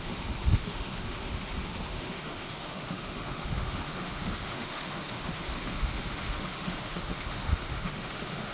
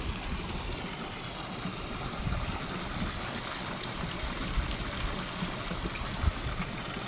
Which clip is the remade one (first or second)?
first